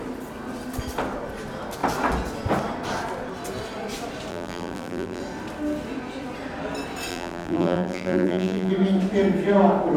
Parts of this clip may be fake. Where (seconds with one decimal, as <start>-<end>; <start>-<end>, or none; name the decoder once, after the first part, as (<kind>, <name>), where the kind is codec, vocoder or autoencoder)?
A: 4.3-5.2 (vocoder, BigVGAN v2); 7.1-8.7